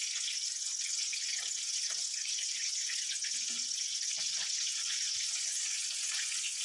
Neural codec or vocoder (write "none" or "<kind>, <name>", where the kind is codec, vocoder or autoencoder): vocoder, Vocos